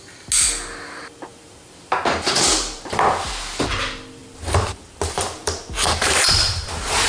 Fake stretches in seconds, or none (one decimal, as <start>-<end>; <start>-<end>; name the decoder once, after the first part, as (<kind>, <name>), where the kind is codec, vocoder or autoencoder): 1.3-3.0 (vocoder, BigVGAN v2); 4.2-7.1